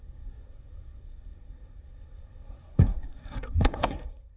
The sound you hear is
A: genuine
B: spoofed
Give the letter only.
B